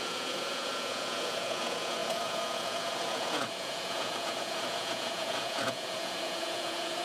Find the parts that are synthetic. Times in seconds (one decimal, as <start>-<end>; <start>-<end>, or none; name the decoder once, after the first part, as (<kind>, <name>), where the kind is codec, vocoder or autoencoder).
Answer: 0.0-7.0 (vocoder, Vocos)